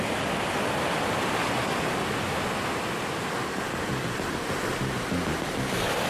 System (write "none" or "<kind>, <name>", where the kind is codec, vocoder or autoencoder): none